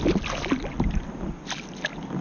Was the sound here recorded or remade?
recorded